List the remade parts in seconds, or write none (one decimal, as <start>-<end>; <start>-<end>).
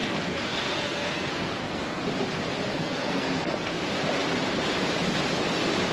0.0-2.0; 2.7-3.7